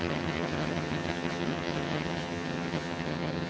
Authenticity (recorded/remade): remade